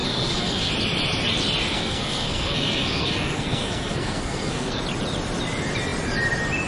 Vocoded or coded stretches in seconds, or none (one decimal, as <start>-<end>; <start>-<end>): 0.0-0.7; 1.7-4.8